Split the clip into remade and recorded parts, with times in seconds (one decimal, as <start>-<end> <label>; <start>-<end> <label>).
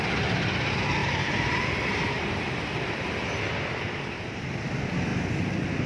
0.0-1.0 recorded; 1.0-4.5 remade; 4.5-5.9 recorded